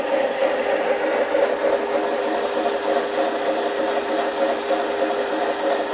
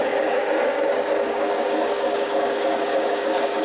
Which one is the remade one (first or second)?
second